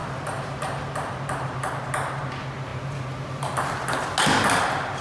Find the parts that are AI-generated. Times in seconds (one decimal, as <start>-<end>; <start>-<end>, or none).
0.0-1.7